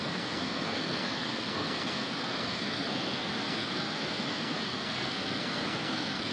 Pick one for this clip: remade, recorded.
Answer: remade